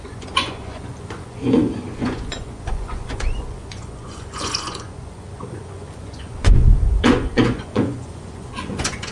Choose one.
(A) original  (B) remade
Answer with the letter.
B